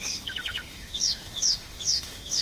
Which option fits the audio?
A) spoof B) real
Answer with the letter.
A